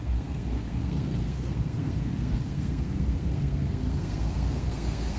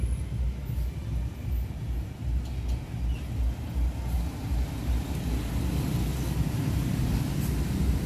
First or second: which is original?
second